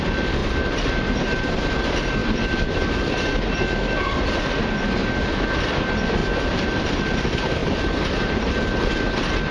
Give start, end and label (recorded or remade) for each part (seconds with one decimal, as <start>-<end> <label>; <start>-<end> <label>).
0.0-0.4 recorded; 0.4-1.4 remade; 1.4-2.2 recorded; 2.2-3.0 remade; 3.0-6.2 recorded; 6.2-7.0 remade; 7.0-7.6 recorded; 7.6-8.9 remade; 8.9-9.5 recorded